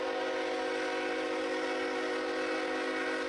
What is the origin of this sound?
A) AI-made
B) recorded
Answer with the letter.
B